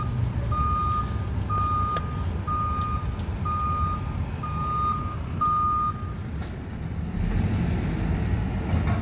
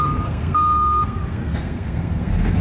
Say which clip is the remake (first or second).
second